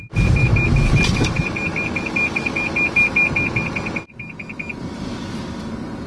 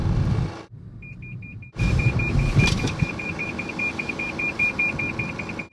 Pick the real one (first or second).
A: first